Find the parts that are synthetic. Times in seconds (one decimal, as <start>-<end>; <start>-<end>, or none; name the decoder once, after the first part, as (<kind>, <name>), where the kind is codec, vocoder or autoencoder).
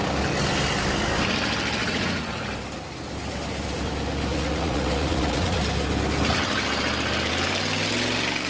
1.8-2.3 (vocoder, Vocos); 4.3-5.6